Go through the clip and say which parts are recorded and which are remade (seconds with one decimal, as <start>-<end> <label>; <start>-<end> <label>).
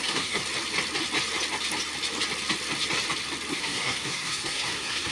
0.0-0.4 remade; 0.4-3.5 recorded; 3.5-5.1 remade